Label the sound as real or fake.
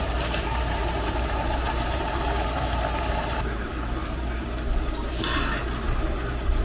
fake